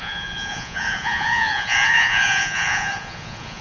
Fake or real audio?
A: fake